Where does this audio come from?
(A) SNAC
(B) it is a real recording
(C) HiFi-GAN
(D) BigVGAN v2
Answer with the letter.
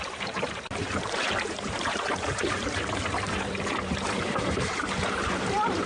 D